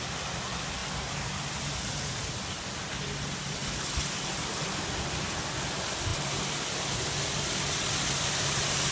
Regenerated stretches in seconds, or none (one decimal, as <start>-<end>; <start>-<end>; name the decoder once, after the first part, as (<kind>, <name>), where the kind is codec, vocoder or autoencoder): none